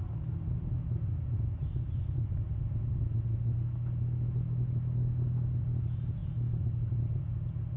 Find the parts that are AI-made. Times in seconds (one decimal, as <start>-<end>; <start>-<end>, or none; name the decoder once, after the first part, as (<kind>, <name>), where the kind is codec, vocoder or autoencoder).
none